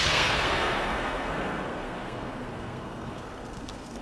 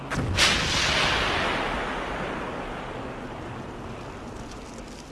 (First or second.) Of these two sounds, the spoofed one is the first